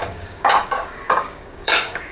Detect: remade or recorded remade